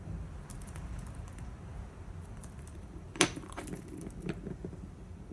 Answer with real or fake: fake